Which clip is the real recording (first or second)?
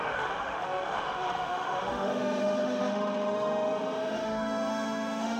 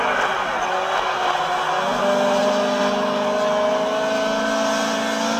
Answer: second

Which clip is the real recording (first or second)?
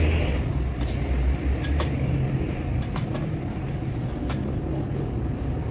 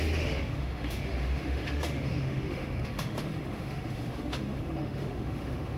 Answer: first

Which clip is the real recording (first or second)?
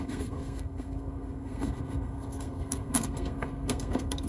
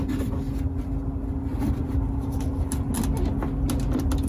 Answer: second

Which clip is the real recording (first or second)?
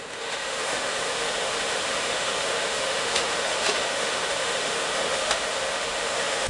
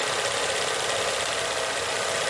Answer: second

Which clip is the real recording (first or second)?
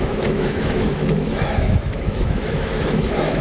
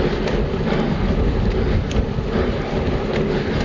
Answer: second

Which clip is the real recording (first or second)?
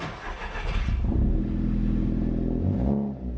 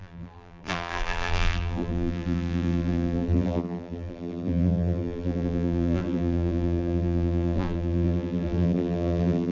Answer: first